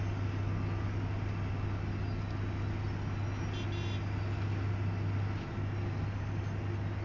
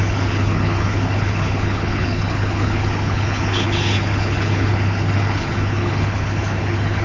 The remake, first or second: second